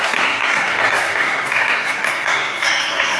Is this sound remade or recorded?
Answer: remade